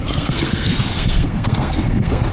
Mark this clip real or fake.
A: fake